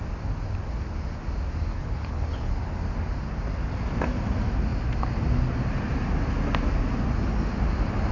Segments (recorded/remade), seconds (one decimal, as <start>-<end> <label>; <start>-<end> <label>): 0.0-1.7 recorded; 1.7-2.5 remade; 2.5-8.1 recorded